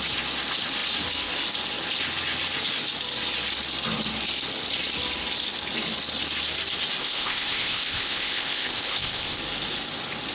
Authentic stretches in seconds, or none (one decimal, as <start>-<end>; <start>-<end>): 0.0-7.0; 9.4-10.3